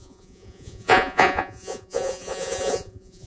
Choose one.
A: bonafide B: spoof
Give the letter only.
B